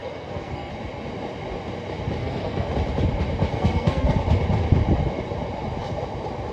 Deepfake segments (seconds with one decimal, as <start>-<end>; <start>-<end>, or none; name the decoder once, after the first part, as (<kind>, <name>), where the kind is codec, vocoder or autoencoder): 0.0-0.7 (codec, SNAC); 2.2-2.7; 3.5-4.2